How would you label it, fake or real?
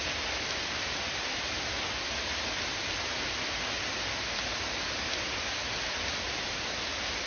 real